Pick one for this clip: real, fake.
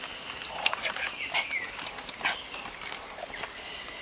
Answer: real